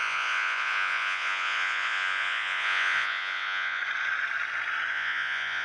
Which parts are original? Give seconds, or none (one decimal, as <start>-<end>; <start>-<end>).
3.8-4.9